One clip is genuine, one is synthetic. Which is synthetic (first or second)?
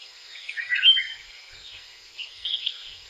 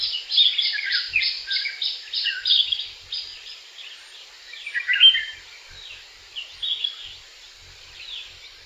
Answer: first